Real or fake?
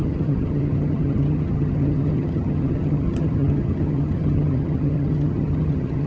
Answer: fake